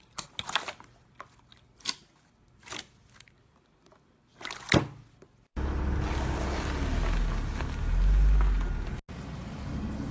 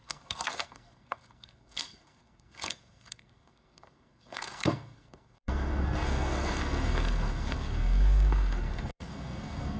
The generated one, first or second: second